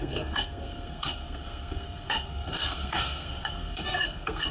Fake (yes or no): yes